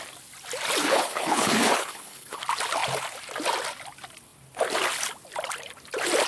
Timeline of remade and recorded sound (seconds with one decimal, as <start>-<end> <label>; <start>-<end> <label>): 0.0-0.8 recorded; 0.8-2.4 remade; 2.4-6.3 recorded